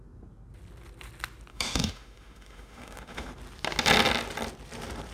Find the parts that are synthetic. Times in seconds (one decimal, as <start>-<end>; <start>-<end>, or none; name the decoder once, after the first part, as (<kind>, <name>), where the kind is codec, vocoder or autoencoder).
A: 1.5-3.3 (autoencoder, DAC-VAE)